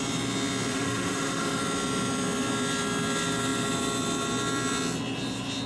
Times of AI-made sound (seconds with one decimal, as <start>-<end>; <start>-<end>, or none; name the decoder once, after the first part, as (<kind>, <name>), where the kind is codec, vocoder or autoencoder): 0.7-1.6 (autoencoder, DAC-VAE)